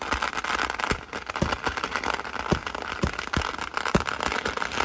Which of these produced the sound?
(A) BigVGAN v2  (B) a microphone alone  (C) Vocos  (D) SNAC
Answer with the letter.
B